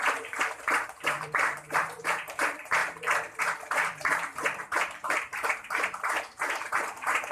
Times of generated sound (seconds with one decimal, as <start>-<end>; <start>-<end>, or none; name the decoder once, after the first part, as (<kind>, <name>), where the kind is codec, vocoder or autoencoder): 0.0-2.8 (vocoder, BigVGAN v2); 3.4-7.3